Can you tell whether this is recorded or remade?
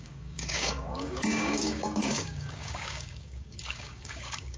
remade